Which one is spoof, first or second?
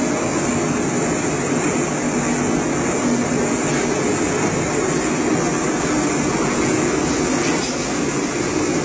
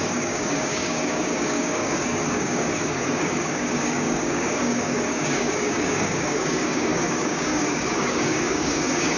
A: second